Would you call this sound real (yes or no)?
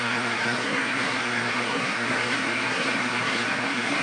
no